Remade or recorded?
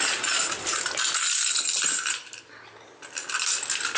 recorded